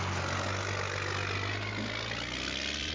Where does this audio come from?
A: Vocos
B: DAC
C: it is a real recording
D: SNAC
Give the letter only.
C